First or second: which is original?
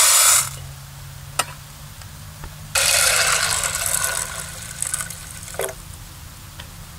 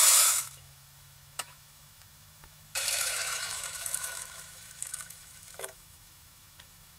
first